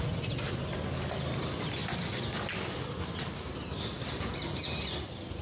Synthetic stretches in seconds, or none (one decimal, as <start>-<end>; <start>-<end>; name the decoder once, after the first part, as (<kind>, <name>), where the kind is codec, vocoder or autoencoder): none